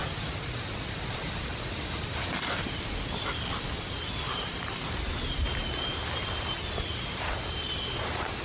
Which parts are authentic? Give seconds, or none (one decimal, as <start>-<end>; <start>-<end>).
0.0-8.4